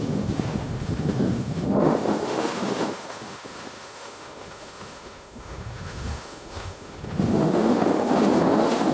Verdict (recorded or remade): remade